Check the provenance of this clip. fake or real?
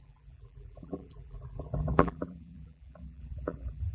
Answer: fake